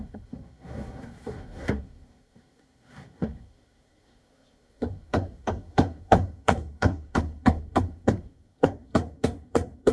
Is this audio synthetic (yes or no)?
yes